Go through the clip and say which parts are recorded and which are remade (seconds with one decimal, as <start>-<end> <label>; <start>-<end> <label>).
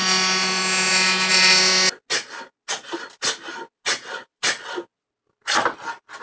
0.0-6.2 recorded